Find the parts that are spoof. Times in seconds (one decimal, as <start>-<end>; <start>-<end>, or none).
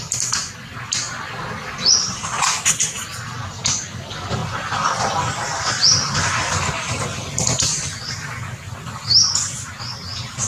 none